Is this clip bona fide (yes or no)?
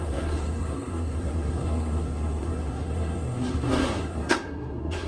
no